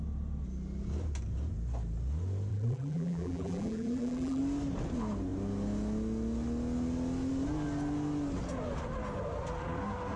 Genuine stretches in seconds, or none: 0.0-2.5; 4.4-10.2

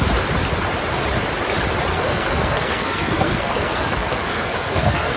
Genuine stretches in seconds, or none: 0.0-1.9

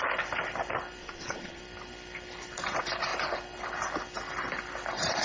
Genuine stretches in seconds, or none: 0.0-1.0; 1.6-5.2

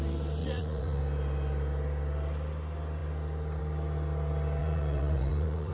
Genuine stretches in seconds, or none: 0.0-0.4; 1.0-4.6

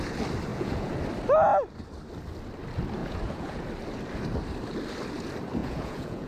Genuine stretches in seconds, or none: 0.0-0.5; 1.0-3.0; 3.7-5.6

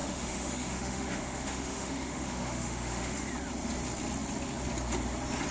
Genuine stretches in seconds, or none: 3.3-5.5

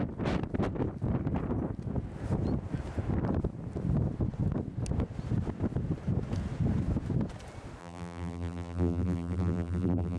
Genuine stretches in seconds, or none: 0.0-7.8

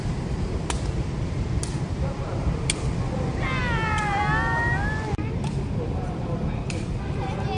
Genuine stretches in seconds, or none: 0.0-7.6